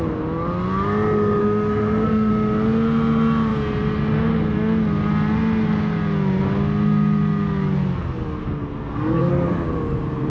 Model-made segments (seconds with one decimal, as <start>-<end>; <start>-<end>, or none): 1.4-2.3; 8.4-9.3